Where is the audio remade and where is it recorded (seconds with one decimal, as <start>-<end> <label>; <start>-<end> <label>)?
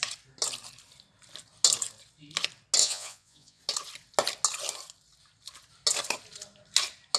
0.0-2.8 recorded; 2.8-3.6 remade; 3.6-7.2 recorded